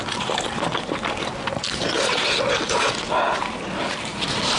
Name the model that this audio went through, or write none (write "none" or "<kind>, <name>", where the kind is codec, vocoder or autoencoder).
none